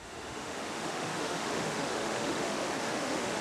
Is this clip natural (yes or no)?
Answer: no